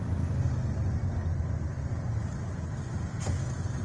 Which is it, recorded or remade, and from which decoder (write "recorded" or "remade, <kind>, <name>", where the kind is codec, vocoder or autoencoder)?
recorded